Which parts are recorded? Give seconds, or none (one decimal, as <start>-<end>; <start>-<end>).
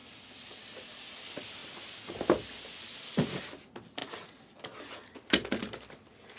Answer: 0.0-6.4